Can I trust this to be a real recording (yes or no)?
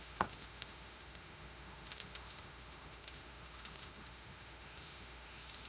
no